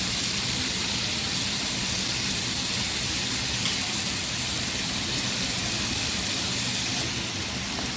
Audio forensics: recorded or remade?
recorded